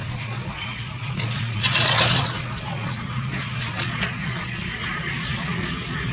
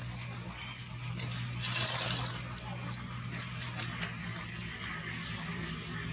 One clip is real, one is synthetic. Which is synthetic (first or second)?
first